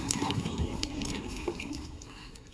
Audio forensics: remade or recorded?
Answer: remade